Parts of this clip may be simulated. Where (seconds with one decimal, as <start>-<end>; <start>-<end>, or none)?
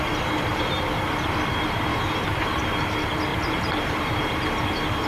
1.9-2.8; 3.3-4.0